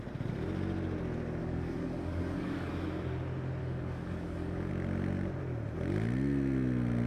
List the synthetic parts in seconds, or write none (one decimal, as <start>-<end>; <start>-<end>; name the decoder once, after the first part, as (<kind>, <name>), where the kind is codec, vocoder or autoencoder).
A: 1.4-2.7 (codec, DAC); 3.6-4.7